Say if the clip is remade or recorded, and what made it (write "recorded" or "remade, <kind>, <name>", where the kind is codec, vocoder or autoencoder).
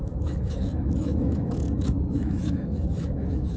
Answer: remade, autoencoder, DAC-VAE